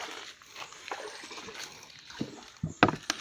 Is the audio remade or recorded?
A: recorded